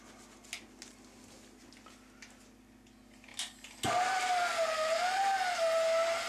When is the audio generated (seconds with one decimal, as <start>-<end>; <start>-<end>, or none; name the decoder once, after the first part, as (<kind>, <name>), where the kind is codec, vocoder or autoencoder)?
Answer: none

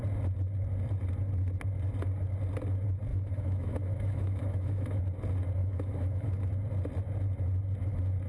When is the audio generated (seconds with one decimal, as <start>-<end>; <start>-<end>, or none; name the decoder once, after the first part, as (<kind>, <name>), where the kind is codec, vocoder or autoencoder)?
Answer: 3.1-5.0 (autoencoder, DAC-VAE); 5.6-6.3

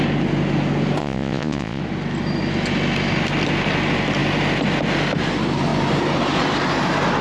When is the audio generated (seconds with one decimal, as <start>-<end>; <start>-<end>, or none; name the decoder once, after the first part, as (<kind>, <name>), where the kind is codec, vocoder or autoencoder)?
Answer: 1.0-1.8 (vocoder, Vocos)

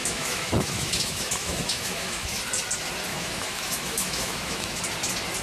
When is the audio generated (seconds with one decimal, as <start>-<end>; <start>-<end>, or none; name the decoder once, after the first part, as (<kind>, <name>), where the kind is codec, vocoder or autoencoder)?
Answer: 0.0-2.4 (autoencoder, DAC-VAE); 3.1-4.8

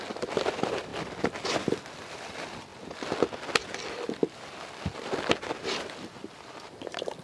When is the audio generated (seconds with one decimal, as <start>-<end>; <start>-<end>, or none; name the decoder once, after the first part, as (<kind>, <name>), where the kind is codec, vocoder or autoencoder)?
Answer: 0.0-0.9 (vocoder, BigVGAN v2); 1.7-2.7; 3.7-4.2; 5.6-7.2

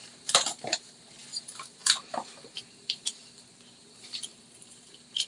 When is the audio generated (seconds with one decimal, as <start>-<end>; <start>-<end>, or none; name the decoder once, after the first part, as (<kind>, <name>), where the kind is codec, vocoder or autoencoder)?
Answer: 0.0-3.0 (vocoder, BigVGAN v2); 3.8-5.3